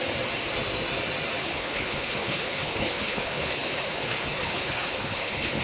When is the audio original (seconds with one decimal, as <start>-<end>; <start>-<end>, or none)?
0.0-1.4